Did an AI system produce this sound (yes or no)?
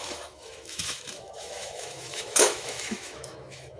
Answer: yes